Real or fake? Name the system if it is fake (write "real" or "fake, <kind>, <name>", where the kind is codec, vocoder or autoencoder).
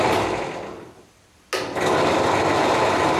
real